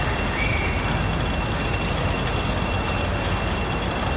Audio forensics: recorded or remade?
recorded